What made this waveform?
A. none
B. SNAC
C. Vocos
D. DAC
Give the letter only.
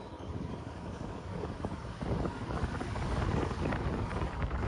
D